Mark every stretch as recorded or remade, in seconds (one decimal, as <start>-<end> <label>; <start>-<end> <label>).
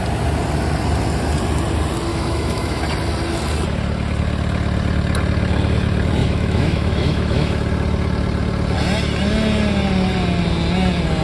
0.0-2.1 recorded; 2.1-2.8 remade; 2.8-6.2 recorded; 6.2-7.6 remade; 7.6-11.2 recorded